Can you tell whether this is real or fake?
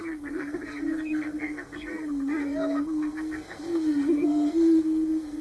fake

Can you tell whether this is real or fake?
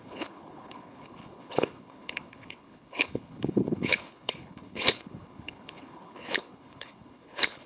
fake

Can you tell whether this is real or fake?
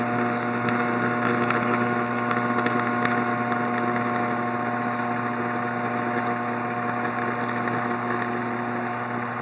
real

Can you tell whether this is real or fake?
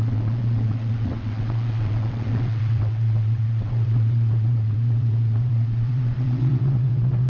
fake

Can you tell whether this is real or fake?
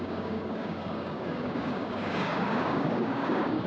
fake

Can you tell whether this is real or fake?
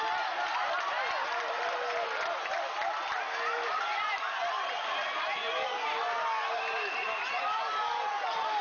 real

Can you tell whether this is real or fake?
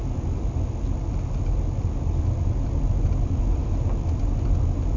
real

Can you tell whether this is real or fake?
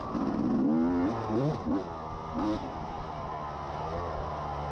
real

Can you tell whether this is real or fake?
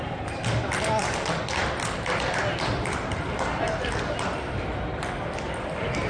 real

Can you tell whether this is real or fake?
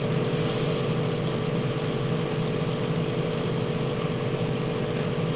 real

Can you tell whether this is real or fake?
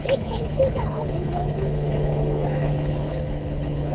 fake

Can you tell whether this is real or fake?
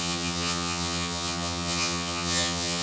fake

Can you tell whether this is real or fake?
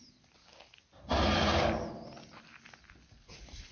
real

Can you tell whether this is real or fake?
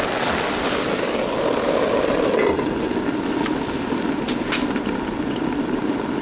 real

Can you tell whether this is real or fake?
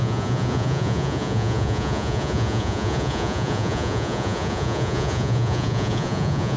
fake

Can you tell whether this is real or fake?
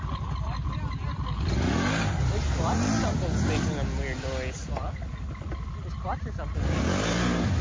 real